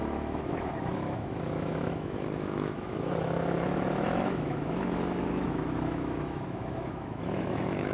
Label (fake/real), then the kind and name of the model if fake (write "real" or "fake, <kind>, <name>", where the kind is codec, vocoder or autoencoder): fake, autoencoder, DAC-VAE